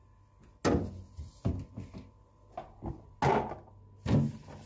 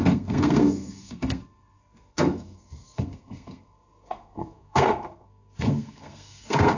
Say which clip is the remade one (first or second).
second